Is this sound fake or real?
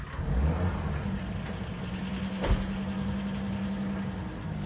real